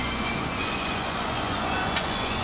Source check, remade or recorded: remade